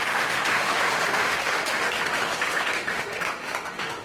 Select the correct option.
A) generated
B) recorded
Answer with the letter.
A